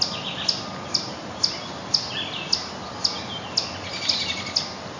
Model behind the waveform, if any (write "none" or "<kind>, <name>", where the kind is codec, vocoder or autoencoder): none